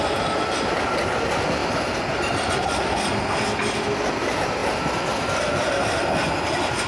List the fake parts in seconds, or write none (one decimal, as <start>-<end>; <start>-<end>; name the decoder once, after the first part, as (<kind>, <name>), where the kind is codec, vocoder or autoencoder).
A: none